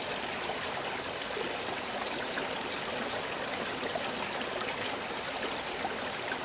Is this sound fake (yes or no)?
no